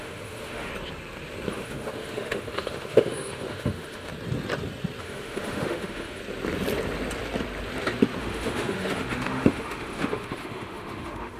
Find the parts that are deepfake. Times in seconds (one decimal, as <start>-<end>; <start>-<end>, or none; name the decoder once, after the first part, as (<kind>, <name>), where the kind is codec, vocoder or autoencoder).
0.0-0.7 (autoencoder, DAC-VAE); 1.5-4.1; 5.0-6.2; 8.2-11.4